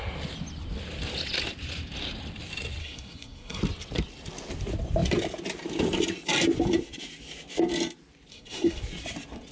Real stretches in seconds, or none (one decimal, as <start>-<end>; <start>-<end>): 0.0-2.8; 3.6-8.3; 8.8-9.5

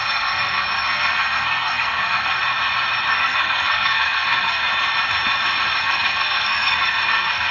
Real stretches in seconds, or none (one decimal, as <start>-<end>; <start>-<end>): 2.4-3.1; 4.6-5.8

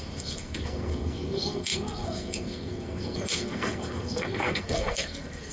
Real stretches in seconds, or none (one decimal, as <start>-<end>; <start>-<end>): none

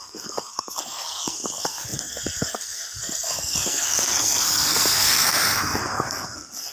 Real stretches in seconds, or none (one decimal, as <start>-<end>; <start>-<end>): none

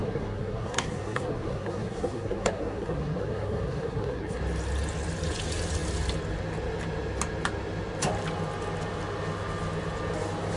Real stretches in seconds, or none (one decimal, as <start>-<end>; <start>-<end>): 4.4-10.6

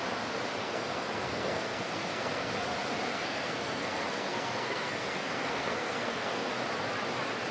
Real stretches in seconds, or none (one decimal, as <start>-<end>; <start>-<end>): 0.0-0.6; 2.5-3.1; 6.5-7.5